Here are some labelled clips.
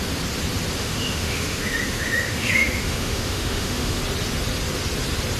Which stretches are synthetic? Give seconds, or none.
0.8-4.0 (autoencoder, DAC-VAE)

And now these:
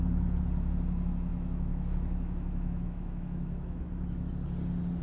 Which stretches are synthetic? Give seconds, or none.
1.3-4.3 (autoencoder, DAC-VAE)

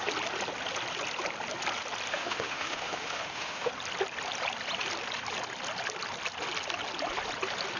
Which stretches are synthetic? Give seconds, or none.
2.1-3.7 (autoencoder, DAC-VAE)